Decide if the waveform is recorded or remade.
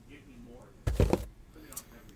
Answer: remade